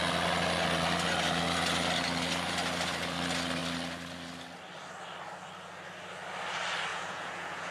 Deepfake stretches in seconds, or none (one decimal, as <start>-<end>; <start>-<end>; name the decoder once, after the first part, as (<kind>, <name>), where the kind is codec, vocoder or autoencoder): 6.9-7.7 (vocoder, Vocos)